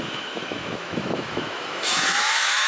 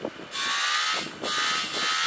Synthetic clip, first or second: first